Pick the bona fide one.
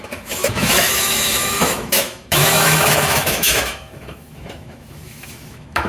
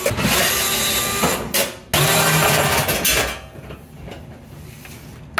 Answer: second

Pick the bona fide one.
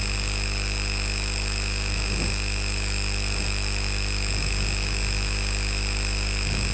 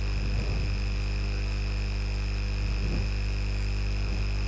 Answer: second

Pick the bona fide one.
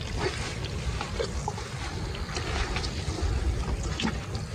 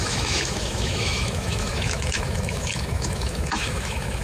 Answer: first